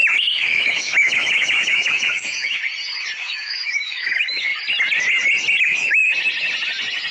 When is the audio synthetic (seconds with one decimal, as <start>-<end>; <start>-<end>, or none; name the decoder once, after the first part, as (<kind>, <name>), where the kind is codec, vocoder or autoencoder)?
0.0-2.6 (autoencoder, DAC-VAE); 3.2-4.5; 5.6-6.0